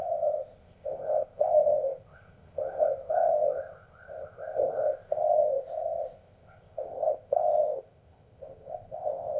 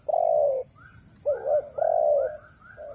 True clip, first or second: second